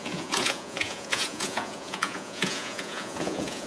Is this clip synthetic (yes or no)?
yes